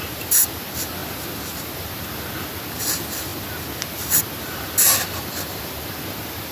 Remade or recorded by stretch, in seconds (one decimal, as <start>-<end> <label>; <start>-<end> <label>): 0.0-6.5 recorded